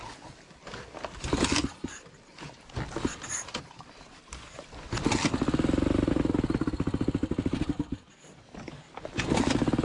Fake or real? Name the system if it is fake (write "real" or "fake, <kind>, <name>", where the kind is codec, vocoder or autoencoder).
real